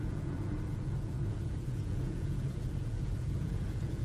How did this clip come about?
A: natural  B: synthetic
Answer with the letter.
B